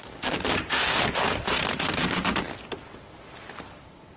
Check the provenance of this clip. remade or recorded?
recorded